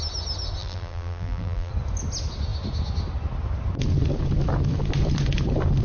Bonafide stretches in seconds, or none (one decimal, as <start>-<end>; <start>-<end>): 0.0-0.6; 1.7-5.8